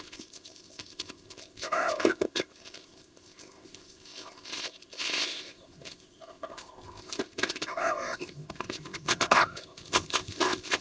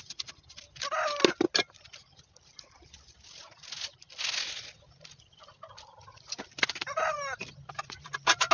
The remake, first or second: first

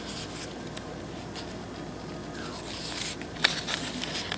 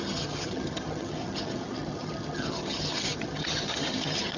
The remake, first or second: second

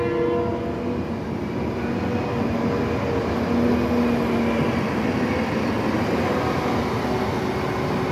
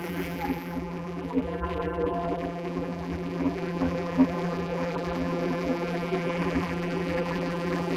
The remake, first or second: second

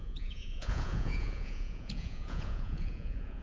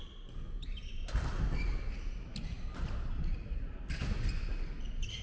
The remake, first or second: first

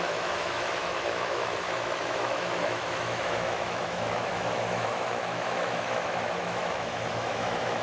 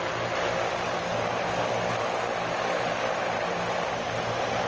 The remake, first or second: first